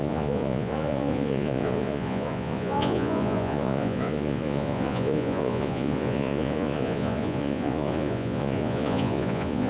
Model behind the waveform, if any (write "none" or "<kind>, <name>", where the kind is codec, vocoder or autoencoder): vocoder, Vocos